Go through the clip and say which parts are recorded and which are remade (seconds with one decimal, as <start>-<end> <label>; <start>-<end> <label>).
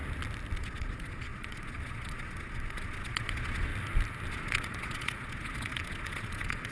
0.0-0.6 recorded; 0.6-3.7 remade; 3.7-4.3 recorded; 4.3-6.7 remade